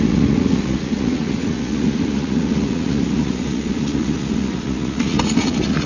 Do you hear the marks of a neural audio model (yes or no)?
yes